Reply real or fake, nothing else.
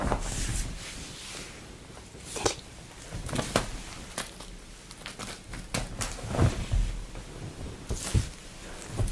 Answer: real